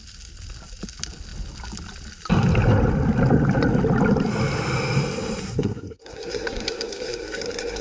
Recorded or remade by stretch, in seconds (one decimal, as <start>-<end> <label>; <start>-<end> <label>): 0.0-5.4 recorded; 5.4-7.8 remade